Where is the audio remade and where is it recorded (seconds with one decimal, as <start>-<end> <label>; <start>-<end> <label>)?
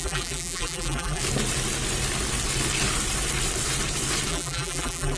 0.0-1.2 remade; 1.2-4.3 recorded; 4.3-5.2 remade